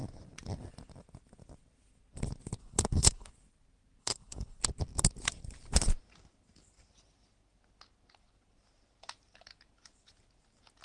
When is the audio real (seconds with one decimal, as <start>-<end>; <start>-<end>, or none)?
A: 0.0-2.6; 3.3-4.0; 4.6-10.8